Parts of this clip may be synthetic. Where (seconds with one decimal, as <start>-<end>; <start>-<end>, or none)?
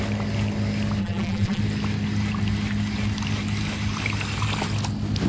1.0-1.6